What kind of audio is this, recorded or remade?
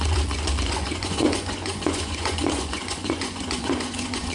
remade